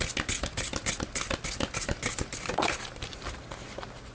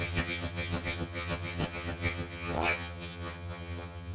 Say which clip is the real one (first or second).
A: first